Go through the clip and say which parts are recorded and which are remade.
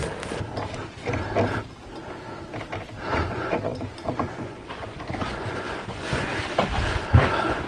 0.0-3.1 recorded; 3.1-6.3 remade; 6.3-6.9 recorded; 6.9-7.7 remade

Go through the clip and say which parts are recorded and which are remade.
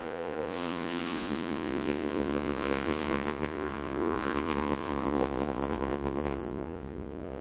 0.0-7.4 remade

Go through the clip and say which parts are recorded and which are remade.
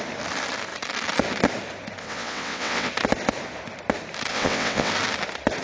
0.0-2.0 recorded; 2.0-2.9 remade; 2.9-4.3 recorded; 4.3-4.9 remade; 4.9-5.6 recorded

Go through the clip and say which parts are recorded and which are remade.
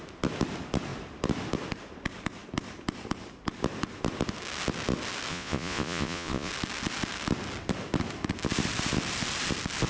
0.0-5.3 recorded; 5.3-6.5 remade; 6.5-9.9 recorded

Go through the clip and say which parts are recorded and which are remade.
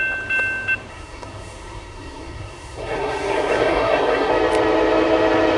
0.0-0.9 recorded; 0.9-4.3 remade; 4.3-5.6 recorded